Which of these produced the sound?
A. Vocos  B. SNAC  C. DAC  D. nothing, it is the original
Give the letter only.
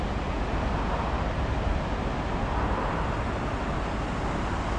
D